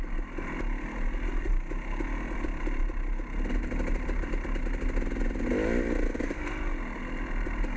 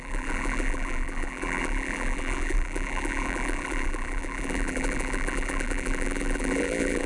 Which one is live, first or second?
first